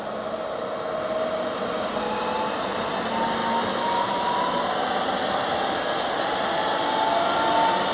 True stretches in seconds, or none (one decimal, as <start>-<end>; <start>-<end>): 0.0-3.4; 4.3-7.9